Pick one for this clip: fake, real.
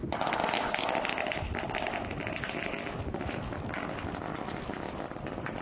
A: real